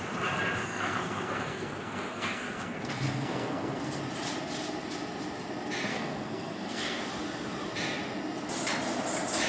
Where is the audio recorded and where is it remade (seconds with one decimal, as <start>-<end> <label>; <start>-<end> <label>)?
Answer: 0.0-0.6 recorded; 0.6-4.0 remade; 4.0-5.9 recorded; 5.9-7.0 remade; 7.0-9.5 recorded